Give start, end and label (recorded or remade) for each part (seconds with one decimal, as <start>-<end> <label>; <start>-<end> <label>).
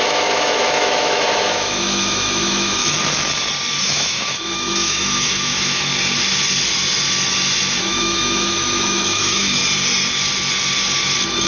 0.0-2.8 remade; 2.8-3.8 recorded; 3.8-5.9 remade; 5.9-7.8 recorded; 7.8-9.6 remade; 9.6-11.5 recorded